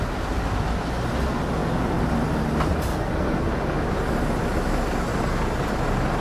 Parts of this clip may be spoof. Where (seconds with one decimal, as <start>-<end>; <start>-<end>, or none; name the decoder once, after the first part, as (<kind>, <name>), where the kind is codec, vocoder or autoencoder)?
2.9-3.5 (codec, SNAC)